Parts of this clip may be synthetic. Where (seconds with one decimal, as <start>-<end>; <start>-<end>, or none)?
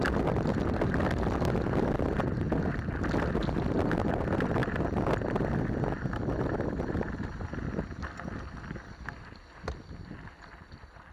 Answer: none